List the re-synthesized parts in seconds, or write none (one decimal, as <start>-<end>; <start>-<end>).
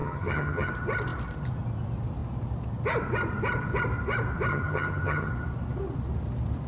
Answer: 0.0-0.7; 4.5-5.3